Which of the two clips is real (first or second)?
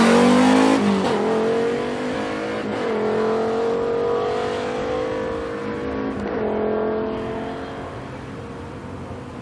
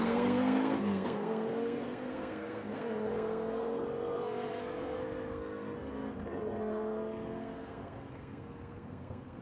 first